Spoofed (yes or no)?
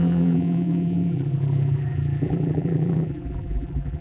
yes